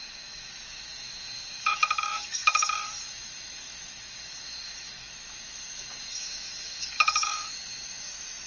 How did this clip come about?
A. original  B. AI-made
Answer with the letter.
B